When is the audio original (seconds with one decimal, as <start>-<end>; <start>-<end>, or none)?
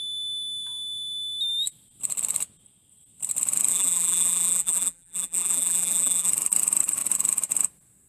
0.0-3.7; 6.3-8.1